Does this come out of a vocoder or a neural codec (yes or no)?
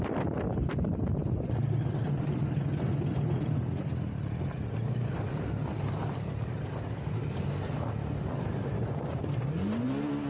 no